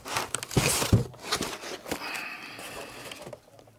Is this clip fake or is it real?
real